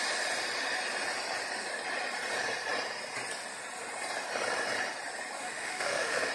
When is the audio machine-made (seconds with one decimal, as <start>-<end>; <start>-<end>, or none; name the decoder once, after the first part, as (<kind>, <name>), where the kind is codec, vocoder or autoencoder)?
5.4-6.3 (autoencoder, DAC-VAE)

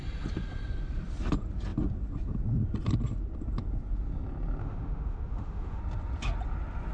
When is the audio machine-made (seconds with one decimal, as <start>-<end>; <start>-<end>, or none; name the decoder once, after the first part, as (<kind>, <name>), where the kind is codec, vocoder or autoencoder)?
4.6-5.8 (autoencoder, DAC-VAE)